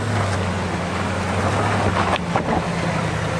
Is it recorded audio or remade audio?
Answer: recorded